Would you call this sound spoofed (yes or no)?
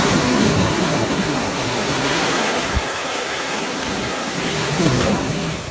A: yes